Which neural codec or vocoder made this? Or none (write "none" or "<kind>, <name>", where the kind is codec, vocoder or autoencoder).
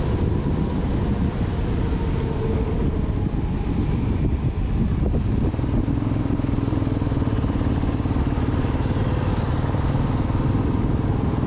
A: none